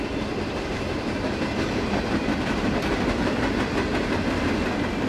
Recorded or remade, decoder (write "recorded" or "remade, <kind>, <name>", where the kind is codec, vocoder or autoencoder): recorded